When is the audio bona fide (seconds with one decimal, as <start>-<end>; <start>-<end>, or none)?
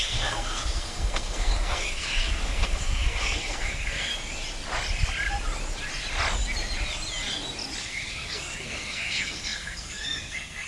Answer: 4.1-7.8